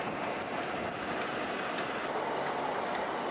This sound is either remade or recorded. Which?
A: recorded